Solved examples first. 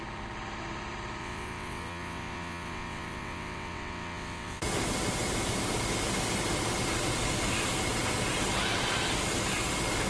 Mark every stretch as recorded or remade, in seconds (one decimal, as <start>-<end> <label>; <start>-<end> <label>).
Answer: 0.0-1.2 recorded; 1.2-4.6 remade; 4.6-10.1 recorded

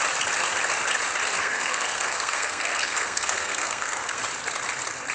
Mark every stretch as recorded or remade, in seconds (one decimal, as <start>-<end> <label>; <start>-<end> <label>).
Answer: 0.0-1.4 recorded; 1.4-4.2 remade; 4.2-5.1 recorded

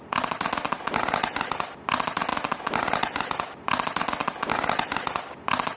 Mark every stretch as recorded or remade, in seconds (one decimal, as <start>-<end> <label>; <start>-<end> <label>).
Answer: 0.0-5.8 recorded

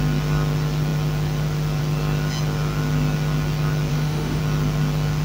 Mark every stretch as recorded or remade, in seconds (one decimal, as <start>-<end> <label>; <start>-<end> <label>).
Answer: 0.0-3.9 recorded; 3.9-4.4 remade; 4.4-5.2 recorded

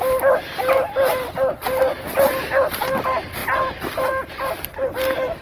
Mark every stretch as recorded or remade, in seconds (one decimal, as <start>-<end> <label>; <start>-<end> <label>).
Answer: 0.0-5.4 recorded

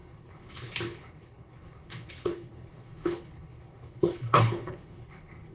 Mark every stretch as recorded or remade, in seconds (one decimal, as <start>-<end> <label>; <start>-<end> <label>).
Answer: 0.0-5.5 remade

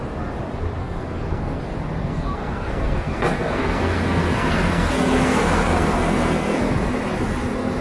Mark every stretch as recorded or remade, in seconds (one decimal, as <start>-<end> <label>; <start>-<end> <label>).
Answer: 0.0-0.8 recorded; 0.8-1.6 remade; 1.6-2.0 recorded; 2.0-6.7 remade; 6.7-7.8 recorded